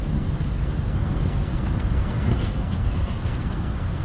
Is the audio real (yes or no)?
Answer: no